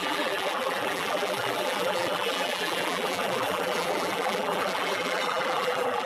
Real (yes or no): no